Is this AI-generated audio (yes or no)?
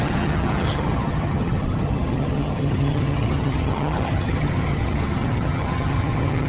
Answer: yes